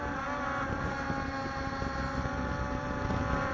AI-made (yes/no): no